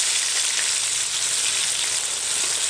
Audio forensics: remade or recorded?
recorded